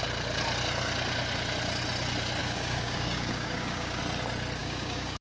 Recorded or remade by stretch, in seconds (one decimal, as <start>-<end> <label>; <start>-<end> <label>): 0.0-2.4 recorded; 2.4-4.0 remade; 4.0-4.6 recorded; 4.6-5.2 remade